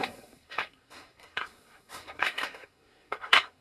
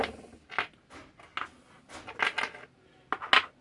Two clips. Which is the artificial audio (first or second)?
first